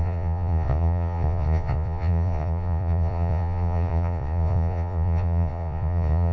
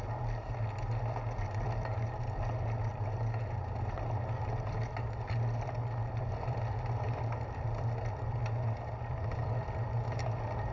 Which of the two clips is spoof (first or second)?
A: first